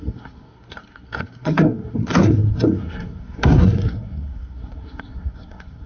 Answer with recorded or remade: remade